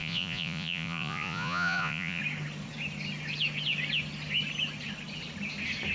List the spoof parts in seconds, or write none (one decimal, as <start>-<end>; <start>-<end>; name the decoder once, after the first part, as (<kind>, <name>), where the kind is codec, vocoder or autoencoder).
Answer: 0.0-2.2 (vocoder, Vocos)